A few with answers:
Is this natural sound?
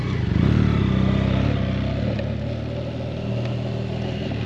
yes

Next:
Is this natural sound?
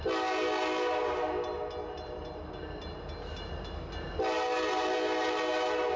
yes